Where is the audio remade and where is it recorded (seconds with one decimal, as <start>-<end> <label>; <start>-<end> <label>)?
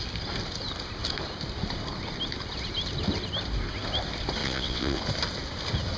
0.0-4.4 recorded; 4.4-5.0 remade; 5.0-6.0 recorded